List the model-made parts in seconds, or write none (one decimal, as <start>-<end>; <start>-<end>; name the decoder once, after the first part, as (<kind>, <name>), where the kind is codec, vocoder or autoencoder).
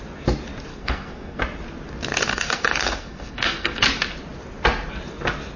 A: 0.7-1.4 (codec, SNAC); 2.3-3.8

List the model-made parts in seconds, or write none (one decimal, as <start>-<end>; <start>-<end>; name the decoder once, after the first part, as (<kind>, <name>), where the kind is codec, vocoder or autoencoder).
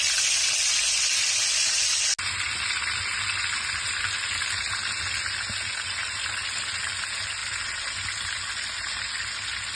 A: none